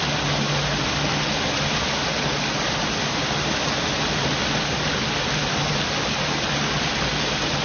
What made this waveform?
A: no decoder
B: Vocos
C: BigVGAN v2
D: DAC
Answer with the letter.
A